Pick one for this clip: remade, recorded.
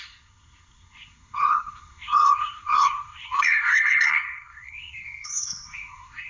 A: remade